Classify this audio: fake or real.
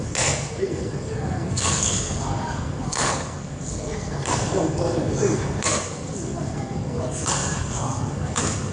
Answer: fake